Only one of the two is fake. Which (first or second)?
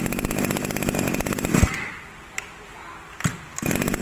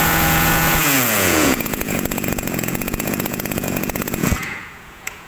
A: second